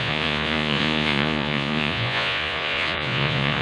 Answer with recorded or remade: remade